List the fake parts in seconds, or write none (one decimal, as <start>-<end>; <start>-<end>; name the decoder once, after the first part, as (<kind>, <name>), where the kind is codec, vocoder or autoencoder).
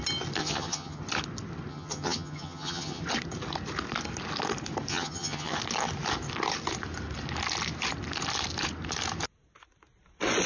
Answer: 0.4-1.0 (vocoder, HiFi-GAN); 1.7-3.0; 4.9-5.6